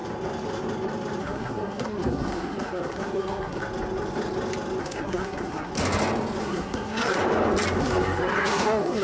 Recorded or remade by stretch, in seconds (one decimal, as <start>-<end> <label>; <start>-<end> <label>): 0.0-1.2 recorded; 1.2-3.6 remade; 3.6-4.8 recorded; 4.8-5.7 remade; 5.7-6.4 recorded; 6.4-7.2 remade; 7.2-7.8 recorded; 7.8-9.0 remade